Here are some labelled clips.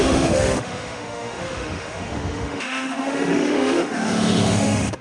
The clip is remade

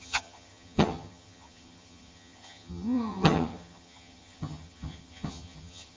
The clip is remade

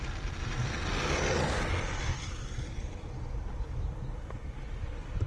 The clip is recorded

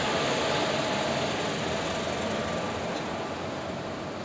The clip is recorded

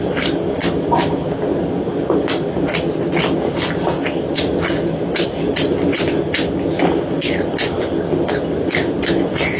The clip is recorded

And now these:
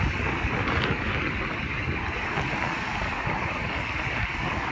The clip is remade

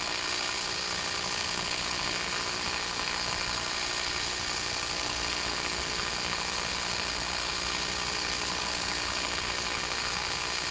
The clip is remade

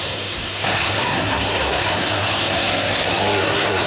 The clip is remade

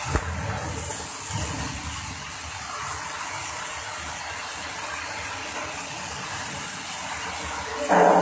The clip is recorded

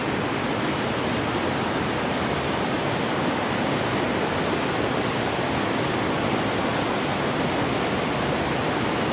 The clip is recorded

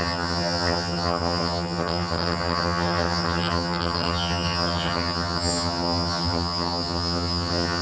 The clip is remade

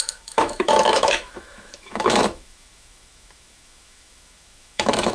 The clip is remade